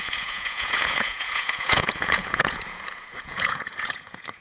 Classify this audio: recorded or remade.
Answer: remade